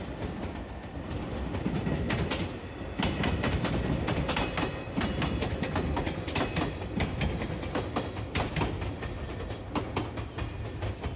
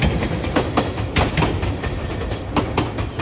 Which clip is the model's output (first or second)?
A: second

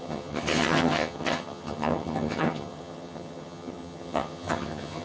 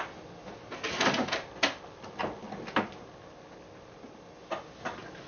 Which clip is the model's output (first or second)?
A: first